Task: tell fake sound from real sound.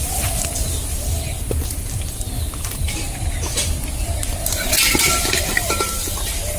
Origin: fake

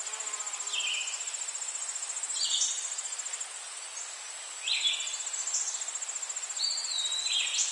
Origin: real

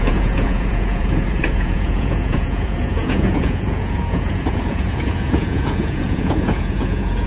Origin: fake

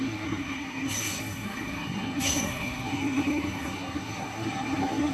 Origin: fake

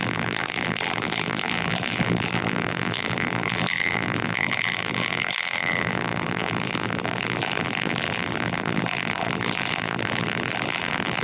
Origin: fake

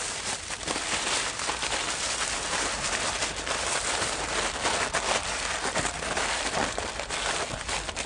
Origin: fake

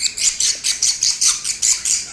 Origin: fake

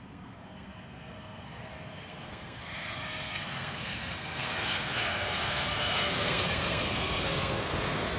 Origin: fake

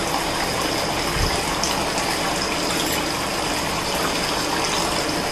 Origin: real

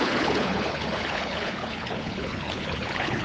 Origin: fake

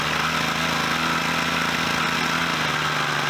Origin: real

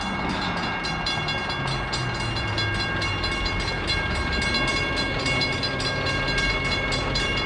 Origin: real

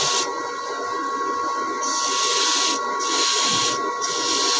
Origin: real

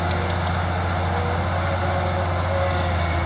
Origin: real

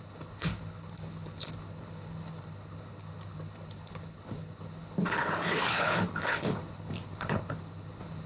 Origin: fake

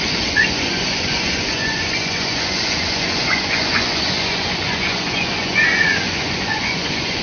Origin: fake